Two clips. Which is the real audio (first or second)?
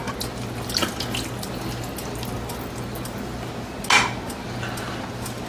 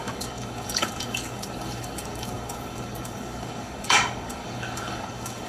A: first